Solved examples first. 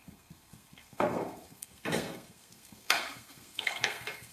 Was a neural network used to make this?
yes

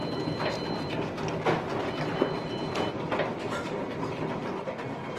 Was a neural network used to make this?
no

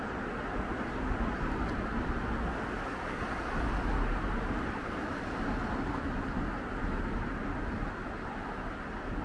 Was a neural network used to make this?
no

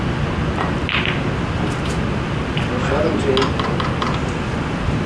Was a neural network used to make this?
no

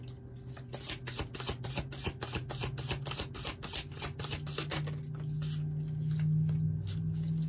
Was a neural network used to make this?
no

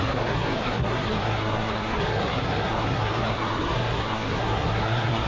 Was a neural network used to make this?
yes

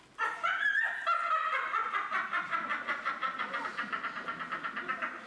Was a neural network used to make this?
no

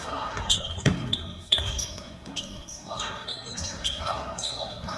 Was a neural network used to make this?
yes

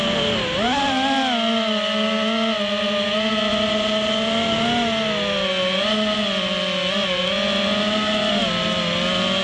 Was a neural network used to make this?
no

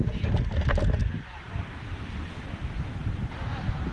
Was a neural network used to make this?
no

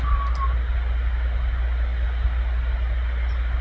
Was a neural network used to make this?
no